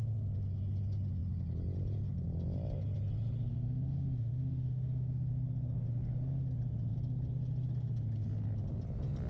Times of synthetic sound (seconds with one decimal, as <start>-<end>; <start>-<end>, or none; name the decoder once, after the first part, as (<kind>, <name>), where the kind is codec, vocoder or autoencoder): 3.5-5.3 (autoencoder, DAC-VAE)